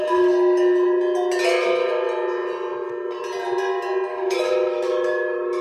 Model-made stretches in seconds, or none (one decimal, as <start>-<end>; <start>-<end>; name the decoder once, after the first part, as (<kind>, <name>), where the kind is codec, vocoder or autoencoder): 4.1-5.6 (autoencoder, DAC-VAE)